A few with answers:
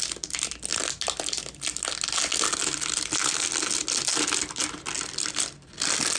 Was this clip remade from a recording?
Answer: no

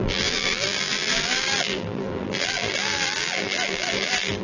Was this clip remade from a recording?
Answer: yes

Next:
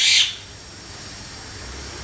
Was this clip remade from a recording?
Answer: no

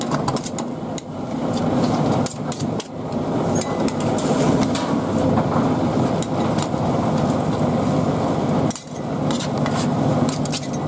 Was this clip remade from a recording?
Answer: no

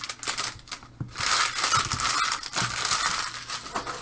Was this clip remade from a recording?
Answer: no